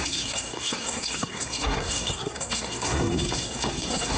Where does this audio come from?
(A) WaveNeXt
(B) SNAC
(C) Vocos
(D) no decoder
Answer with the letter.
B